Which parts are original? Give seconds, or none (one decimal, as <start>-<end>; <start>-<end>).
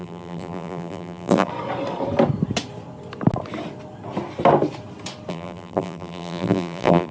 1.5-5.3